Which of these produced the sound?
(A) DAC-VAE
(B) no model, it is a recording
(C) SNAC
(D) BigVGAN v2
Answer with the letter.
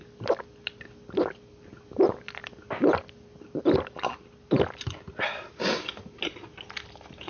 B